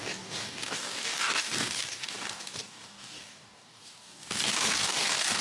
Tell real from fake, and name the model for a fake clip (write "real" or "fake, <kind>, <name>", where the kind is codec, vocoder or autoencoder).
fake, codec, DAC